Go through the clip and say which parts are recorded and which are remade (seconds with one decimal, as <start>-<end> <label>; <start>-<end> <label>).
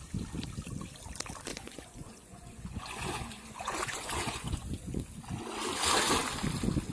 0.0-1.5 recorded; 1.5-5.0 remade; 5.0-6.9 recorded